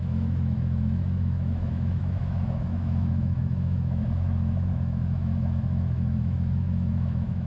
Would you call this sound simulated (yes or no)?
yes